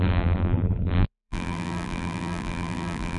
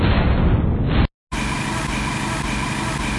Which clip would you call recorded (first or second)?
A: second